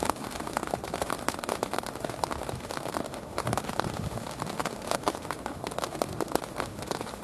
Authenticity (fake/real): fake